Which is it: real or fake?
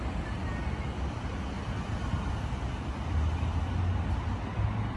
real